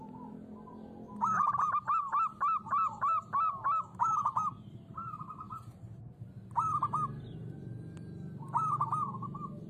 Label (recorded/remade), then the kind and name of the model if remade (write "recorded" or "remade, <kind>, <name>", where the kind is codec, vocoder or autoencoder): recorded